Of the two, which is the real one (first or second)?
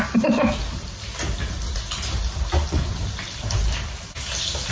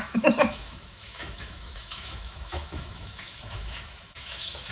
first